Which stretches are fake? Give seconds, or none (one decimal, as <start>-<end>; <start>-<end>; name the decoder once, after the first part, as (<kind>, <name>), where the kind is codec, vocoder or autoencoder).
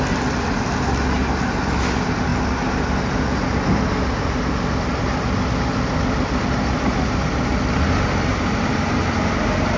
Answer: none